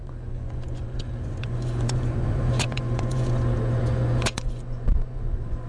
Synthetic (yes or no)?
yes